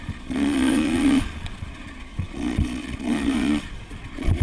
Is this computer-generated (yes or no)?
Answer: yes